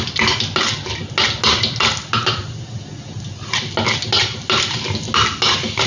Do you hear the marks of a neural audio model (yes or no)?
no